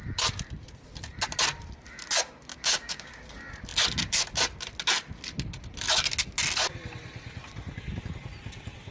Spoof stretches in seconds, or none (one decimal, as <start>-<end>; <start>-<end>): 2.5-3.1